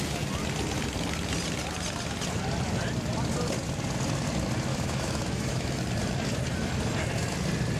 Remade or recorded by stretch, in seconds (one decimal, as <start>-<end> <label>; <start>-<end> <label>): 0.0-4.7 recorded; 4.7-5.8 remade; 5.8-7.8 recorded